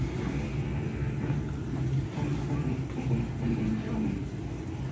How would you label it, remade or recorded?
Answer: recorded